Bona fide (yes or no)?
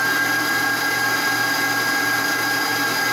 yes